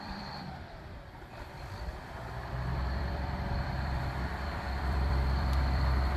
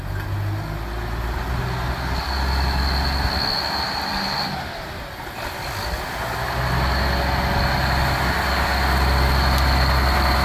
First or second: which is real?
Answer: second